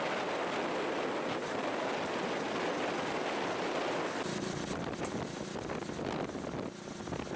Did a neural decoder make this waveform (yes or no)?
no